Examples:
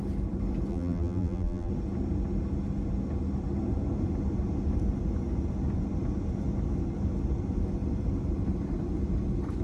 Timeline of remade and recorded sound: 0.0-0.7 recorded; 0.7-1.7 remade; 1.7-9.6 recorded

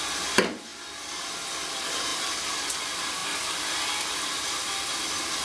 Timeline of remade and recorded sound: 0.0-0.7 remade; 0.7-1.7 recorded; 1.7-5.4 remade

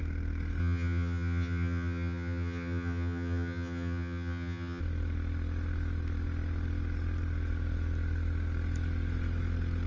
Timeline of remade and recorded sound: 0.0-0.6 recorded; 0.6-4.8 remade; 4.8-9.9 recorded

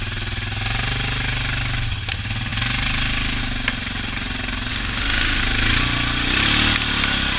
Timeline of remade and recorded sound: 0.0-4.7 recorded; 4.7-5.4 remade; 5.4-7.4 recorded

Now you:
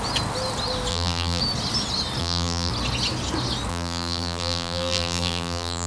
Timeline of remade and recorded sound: 0.0-0.9 recorded; 0.9-1.4 remade; 1.4-2.2 recorded; 2.2-2.7 remade; 2.7-3.7 recorded; 3.7-5.9 remade

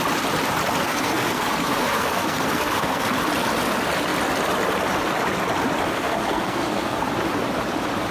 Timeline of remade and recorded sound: 0.0-0.8 recorded; 0.8-3.2 remade; 3.2-5.9 recorded; 5.9-7.0 remade; 7.0-8.1 recorded

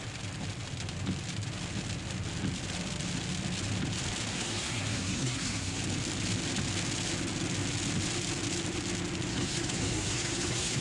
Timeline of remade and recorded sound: 0.0-4.3 recorded; 4.3-5.8 remade; 5.8-9.3 recorded; 9.3-10.8 remade

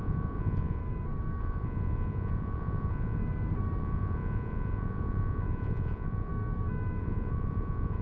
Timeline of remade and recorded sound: 0.0-0.8 remade; 0.8-1.4 recorded; 1.4-3.2 remade; 3.2-3.8 recorded; 3.8-6.3 remade; 6.3-7.0 recorded; 7.0-8.0 remade